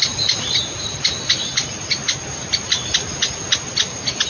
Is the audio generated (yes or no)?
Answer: no